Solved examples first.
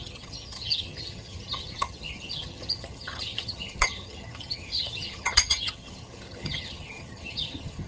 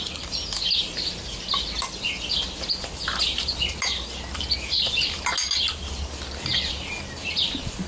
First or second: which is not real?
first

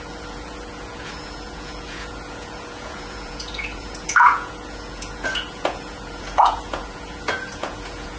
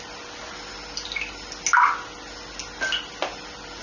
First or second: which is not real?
first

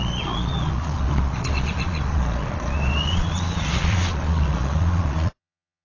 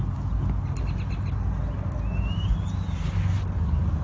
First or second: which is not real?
first